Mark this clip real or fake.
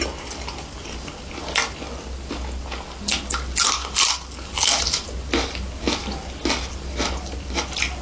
real